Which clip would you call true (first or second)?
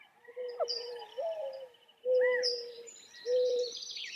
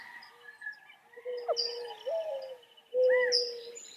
second